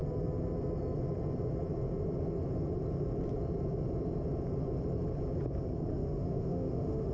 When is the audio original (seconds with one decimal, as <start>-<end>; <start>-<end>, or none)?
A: 0.0-5.9

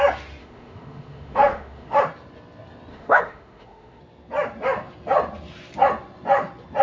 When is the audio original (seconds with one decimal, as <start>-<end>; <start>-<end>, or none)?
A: 0.0-0.4; 2.0-2.9; 4.0-6.8

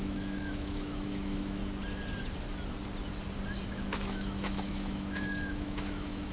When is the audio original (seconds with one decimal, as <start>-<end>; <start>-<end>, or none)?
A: 1.6-3.8

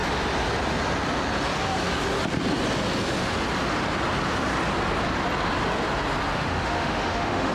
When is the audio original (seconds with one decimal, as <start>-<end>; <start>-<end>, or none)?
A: 0.0-6.3

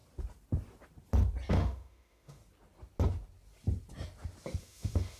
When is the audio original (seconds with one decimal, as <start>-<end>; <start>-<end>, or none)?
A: 0.0-1.5; 2.4-4.6

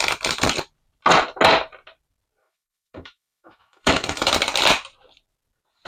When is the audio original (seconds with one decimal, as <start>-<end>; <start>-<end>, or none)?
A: 0.0-2.4; 4.3-5.9

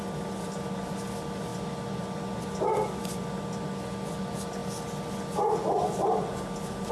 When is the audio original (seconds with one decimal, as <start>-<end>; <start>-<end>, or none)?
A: 0.0-6.9